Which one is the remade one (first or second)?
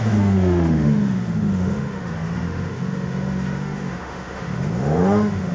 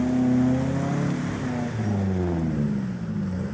first